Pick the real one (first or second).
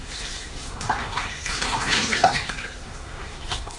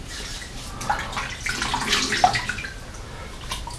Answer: second